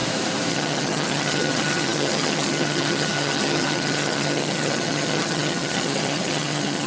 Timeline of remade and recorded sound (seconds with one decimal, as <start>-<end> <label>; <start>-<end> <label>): 0.0-0.5 recorded; 0.5-6.9 remade